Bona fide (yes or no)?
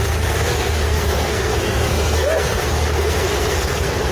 no